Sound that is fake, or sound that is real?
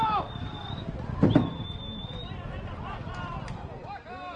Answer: real